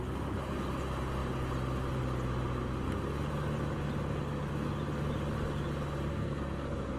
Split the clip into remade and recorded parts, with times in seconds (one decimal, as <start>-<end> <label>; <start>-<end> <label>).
0.0-6.1 recorded; 6.1-7.0 remade